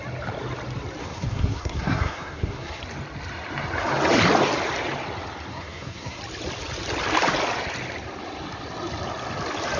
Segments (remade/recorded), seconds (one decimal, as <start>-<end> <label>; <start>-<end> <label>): 0.0-1.0 recorded; 1.0-2.8 remade; 2.8-5.5 recorded; 5.5-6.2 remade; 6.2-9.8 recorded